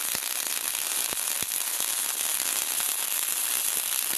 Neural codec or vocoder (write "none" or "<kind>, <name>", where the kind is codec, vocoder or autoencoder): none